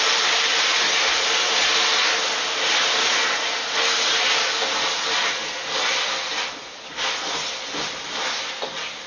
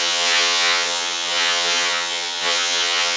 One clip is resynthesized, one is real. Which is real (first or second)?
first